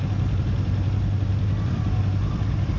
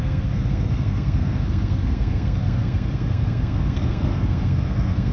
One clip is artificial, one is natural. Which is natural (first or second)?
first